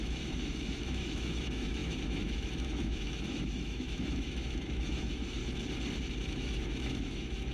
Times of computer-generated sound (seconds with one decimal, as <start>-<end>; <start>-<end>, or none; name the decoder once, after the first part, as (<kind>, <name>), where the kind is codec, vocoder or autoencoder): 0.0-5.4 (autoencoder, DAC-VAE); 6.2-7.5